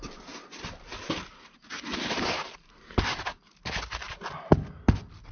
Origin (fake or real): real